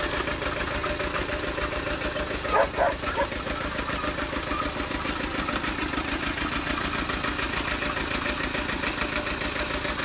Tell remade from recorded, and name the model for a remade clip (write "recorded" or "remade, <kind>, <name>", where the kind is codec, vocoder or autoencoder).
recorded